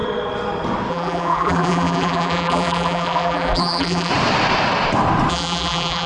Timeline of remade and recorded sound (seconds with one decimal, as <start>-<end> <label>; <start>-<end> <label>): 0.0-0.9 recorded; 0.9-4.1 remade; 4.1-5.3 recorded; 5.3-6.1 remade